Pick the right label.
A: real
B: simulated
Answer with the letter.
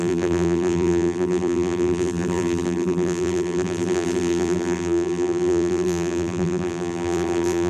B